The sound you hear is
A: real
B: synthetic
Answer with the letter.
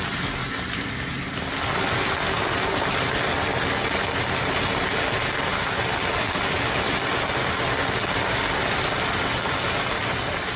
A